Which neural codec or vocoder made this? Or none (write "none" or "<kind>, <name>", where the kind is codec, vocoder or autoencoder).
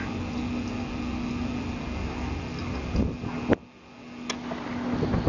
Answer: none